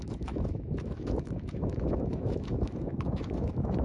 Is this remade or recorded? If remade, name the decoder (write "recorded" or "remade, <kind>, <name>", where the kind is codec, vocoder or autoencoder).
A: remade, autoencoder, DAC-VAE